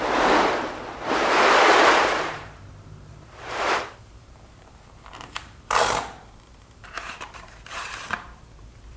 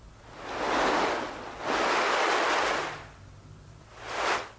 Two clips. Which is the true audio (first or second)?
second